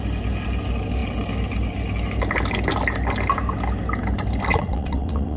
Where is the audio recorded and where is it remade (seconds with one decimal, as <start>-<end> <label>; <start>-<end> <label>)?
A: 0.0-4.5 recorded; 4.5-5.4 remade